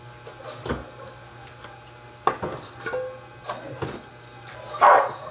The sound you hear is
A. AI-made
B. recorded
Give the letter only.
B